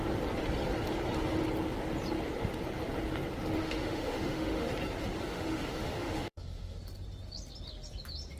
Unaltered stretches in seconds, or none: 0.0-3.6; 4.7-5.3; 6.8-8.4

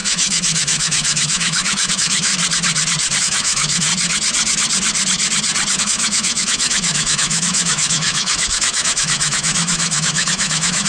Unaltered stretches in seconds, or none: 2.3-3.2; 3.9-5.8